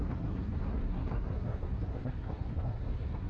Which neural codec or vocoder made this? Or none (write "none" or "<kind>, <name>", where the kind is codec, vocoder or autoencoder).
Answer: codec, SNAC